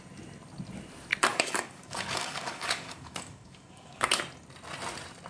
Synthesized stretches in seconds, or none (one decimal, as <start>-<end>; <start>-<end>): 1.3-4.2